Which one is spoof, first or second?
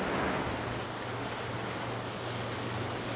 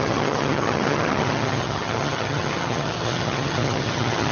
second